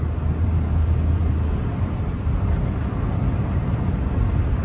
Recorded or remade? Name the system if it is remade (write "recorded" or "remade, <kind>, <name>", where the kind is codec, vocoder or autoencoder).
recorded